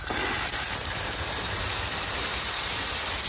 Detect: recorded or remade recorded